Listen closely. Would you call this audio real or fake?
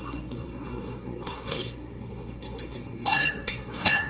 fake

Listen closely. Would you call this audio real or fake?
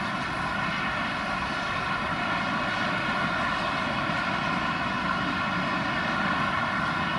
real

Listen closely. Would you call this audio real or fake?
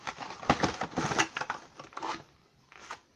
real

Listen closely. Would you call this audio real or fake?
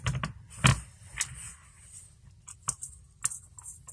real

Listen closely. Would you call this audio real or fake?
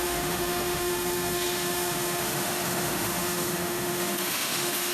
fake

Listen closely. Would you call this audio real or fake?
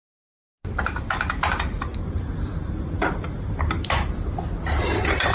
real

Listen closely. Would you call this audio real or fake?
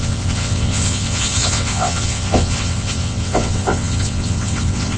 fake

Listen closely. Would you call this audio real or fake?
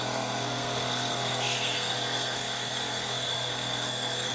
fake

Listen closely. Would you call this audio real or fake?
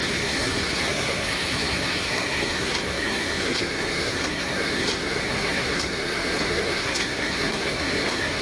fake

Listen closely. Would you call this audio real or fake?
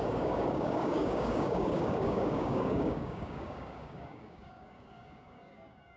fake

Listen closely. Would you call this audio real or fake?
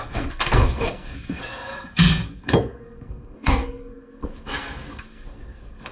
fake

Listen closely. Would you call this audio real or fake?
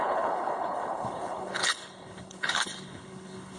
fake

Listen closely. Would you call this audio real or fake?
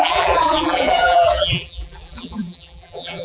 fake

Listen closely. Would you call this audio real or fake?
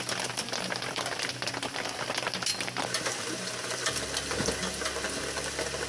real